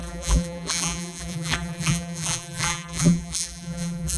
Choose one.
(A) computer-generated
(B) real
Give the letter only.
A